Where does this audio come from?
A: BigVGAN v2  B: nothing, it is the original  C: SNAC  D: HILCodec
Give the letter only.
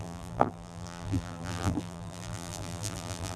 A